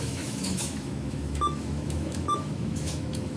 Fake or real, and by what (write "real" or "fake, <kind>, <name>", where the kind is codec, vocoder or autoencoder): fake, autoencoder, DAC-VAE